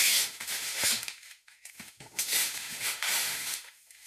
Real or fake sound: fake